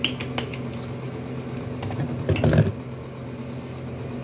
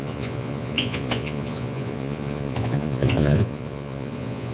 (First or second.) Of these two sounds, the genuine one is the first